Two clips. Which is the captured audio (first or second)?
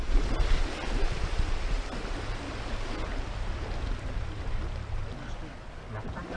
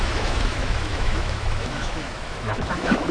first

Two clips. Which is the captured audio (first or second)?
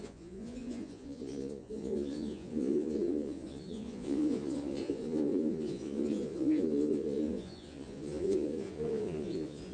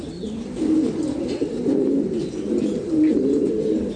second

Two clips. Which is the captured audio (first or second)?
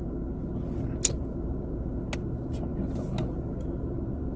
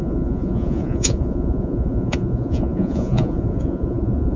first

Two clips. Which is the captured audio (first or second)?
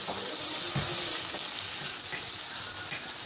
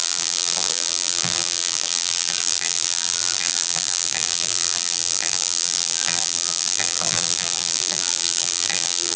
first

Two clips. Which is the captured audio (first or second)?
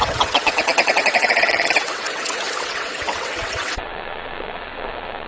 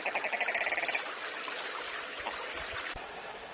second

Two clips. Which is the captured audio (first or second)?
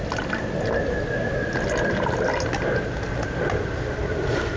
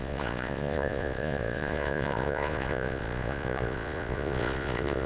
first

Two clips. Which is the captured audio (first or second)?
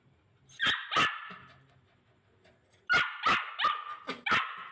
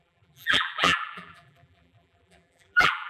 first